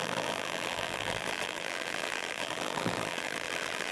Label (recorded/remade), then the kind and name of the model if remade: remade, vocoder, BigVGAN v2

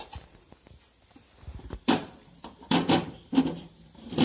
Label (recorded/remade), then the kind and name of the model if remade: remade, vocoder, BigVGAN v2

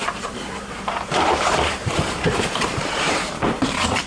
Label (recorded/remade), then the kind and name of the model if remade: remade, vocoder, BigVGAN v2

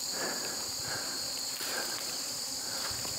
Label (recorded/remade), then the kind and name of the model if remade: remade, vocoder, BigVGAN v2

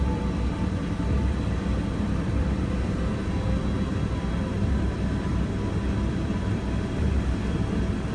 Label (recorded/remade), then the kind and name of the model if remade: remade, vocoder, BigVGAN v2